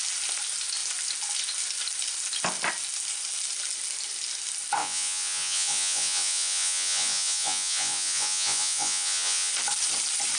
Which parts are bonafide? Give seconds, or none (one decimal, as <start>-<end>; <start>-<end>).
0.0-4.8; 9.5-10.4